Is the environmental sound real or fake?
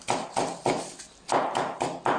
real